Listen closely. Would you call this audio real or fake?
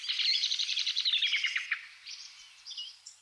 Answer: fake